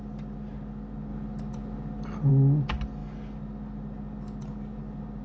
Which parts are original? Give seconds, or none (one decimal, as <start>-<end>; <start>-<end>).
0.0-5.2